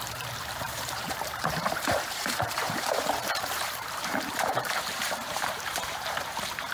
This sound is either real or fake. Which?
fake